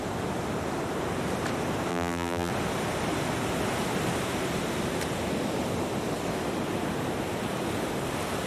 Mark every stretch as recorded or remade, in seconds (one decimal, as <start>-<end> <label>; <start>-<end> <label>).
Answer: 0.0-1.9 recorded; 1.9-2.5 remade; 2.5-8.5 recorded